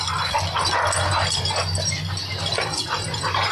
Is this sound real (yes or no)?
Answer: yes